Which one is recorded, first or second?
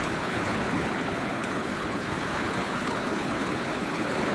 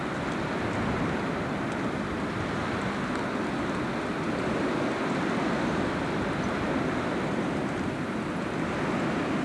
second